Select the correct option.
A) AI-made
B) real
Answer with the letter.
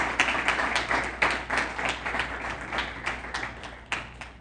B